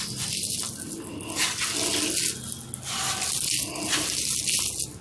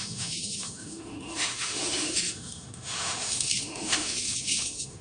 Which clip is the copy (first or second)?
second